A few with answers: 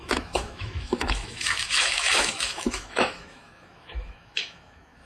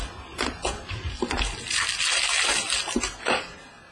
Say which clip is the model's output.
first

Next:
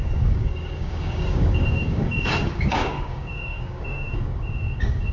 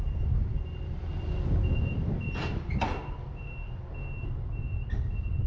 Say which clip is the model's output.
first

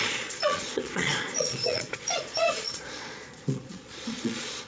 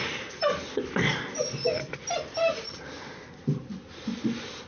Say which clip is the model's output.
first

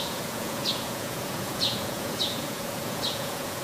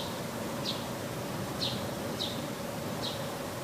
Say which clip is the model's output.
first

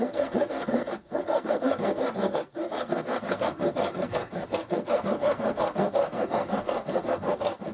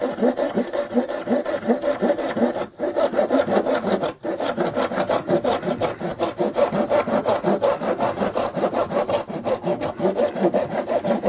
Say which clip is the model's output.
first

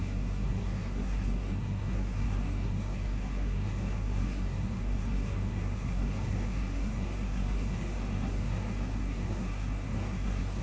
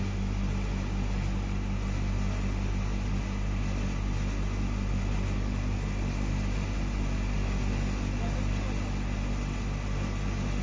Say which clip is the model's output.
first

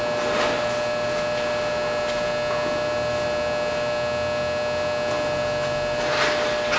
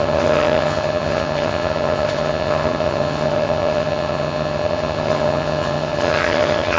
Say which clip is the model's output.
second